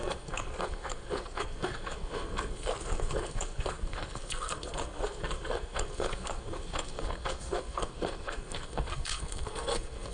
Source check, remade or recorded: remade